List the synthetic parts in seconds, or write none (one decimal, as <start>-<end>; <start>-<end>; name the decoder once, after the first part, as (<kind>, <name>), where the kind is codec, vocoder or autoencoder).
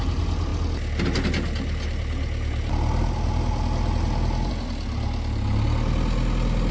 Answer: none